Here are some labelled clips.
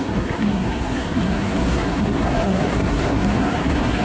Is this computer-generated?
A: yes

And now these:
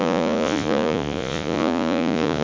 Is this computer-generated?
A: yes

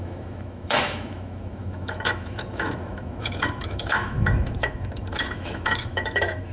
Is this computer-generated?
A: yes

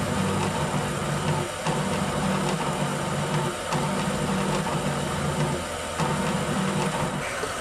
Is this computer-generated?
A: no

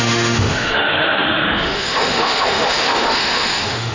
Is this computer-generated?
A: yes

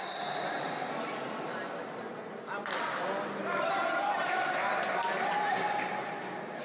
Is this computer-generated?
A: no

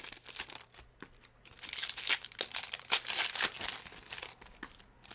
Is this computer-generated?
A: no